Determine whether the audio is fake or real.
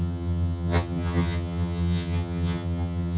fake